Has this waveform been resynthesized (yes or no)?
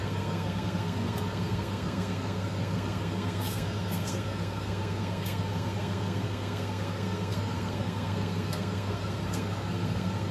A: yes